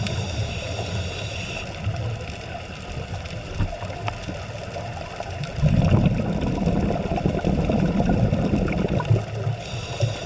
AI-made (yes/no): no